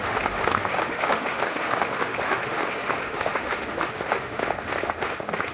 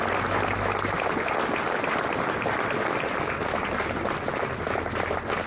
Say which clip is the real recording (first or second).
second